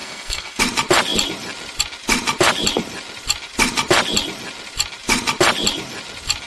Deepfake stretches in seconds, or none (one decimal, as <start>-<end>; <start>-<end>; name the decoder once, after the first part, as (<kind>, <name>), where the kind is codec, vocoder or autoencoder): 0.0-0.6 (codec, SNAC)